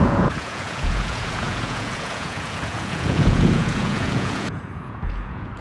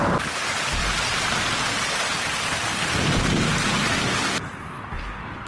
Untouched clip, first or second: second